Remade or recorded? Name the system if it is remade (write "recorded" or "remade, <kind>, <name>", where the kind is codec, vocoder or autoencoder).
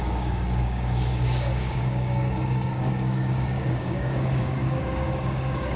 remade, codec, DAC